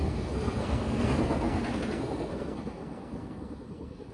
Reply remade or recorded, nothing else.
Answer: remade